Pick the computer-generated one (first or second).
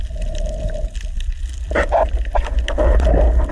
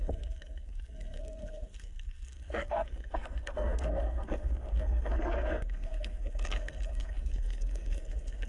second